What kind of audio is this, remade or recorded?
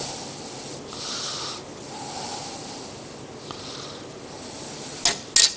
recorded